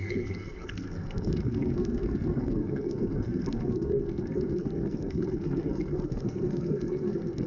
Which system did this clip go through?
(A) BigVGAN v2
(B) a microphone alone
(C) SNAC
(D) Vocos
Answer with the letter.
C